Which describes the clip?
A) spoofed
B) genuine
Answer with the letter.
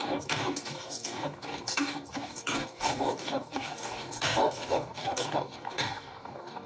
A